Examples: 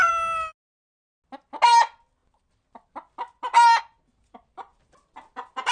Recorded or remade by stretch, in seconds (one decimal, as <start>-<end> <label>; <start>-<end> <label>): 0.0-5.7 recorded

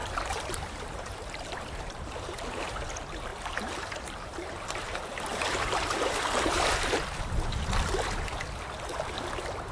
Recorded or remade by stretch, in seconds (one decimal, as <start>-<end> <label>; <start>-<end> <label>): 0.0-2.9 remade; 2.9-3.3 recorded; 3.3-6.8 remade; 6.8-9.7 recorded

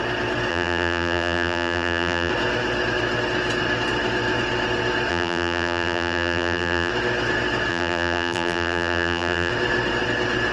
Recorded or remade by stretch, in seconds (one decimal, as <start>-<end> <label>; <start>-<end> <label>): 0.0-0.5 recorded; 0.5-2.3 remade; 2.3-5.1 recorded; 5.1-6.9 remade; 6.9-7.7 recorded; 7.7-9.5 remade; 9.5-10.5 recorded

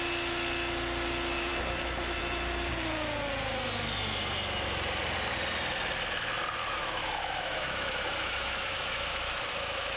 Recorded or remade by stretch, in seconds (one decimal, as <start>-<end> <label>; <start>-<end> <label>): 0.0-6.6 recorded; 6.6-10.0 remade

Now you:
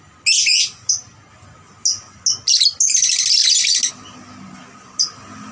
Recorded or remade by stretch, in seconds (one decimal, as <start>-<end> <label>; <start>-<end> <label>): 0.0-5.5 recorded

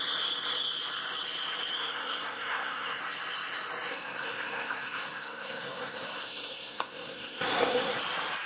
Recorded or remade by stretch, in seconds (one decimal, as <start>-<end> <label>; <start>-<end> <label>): 0.0-1.7 recorded; 1.7-3.0 remade; 3.0-3.9 recorded; 3.9-8.0 remade; 8.0-8.5 recorded

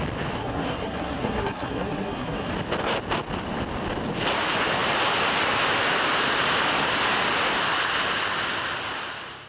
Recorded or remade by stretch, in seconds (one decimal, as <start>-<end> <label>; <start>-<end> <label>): 0.0-0.4 recorded; 0.4-2.5 remade; 2.5-9.5 recorded